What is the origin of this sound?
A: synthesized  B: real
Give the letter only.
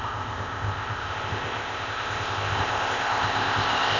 A